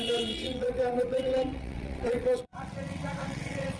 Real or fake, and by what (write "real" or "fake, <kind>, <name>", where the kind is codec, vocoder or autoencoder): fake, vocoder, WaveNeXt